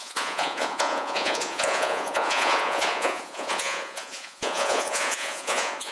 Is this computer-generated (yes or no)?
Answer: yes